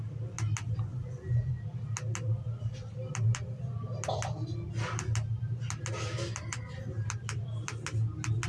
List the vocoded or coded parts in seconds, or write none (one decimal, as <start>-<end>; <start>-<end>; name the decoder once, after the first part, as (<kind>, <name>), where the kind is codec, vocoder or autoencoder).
0.9-1.5 (vocoder, Vocos)